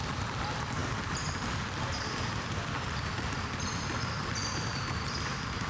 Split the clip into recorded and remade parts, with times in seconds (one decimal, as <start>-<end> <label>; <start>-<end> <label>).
0.0-5.7 recorded